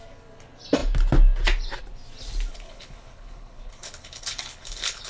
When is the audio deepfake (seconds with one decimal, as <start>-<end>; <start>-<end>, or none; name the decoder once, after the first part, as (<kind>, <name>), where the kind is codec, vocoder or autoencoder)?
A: 2.5-5.1 (codec, HILCodec)